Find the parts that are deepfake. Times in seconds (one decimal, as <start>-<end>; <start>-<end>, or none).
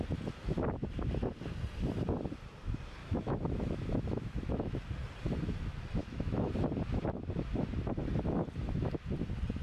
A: 3.0-4.7; 6.0-6.5